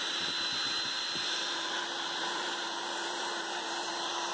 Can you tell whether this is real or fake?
fake